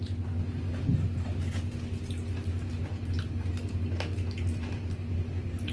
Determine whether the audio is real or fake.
real